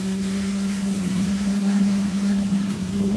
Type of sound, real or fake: fake